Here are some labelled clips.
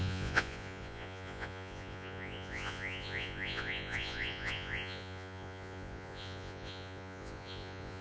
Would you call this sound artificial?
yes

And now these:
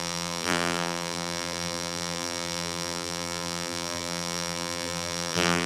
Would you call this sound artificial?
yes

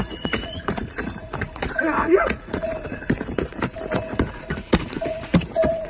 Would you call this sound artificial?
yes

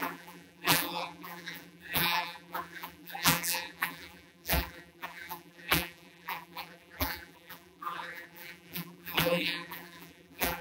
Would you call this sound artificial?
yes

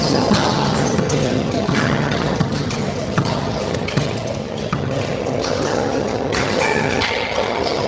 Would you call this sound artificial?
yes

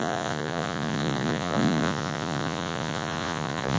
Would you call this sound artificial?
yes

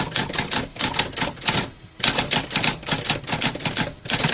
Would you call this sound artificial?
no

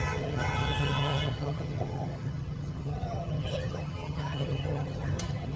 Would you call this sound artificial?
yes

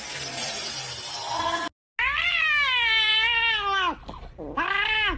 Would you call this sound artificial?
no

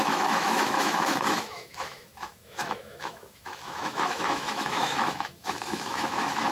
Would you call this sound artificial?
yes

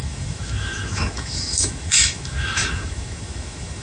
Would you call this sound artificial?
yes